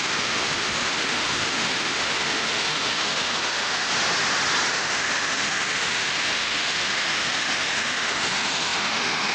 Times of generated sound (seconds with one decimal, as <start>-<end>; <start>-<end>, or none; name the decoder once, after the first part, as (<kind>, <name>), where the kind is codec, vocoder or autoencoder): 0.0-3.9 (autoencoder, DAC-VAE); 4.7-9.3